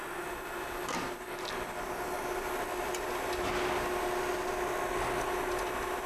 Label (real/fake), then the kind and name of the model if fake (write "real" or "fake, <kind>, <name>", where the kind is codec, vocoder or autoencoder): real